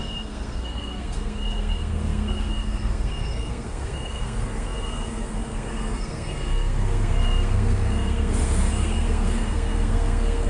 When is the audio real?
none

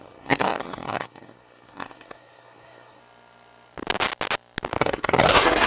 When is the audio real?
3.0-4.8

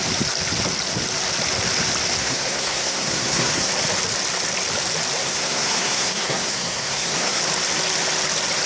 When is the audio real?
0.0-2.2; 3.7-5.2; 7.4-8.7